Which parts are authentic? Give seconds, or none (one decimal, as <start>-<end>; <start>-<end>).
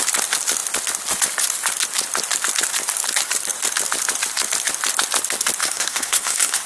0.0-5.6